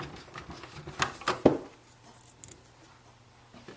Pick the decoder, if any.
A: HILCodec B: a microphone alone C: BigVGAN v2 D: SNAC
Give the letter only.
B